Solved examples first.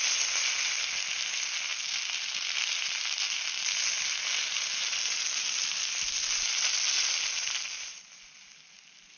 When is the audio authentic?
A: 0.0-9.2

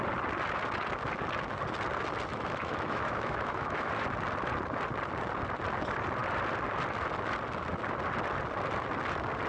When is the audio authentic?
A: 0.0-2.3; 3.9-9.5

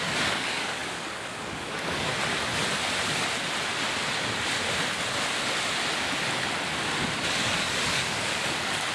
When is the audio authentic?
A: 2.1-7.3

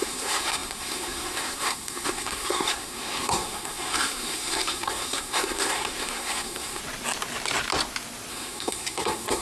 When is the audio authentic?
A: 6.8-8.3

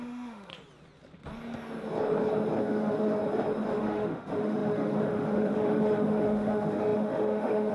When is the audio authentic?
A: 0.5-2.6; 3.2-3.8

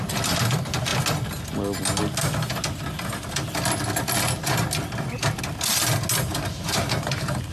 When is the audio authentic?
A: 0.0-6.3

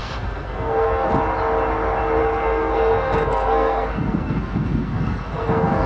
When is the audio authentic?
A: 1.1-2.2